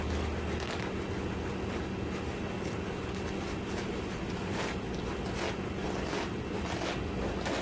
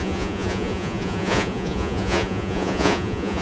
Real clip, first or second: first